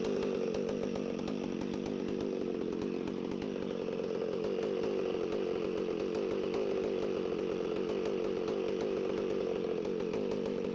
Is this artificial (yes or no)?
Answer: no